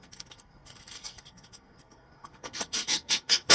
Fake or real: fake